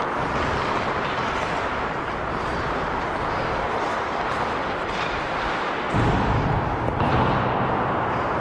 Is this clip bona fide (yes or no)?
yes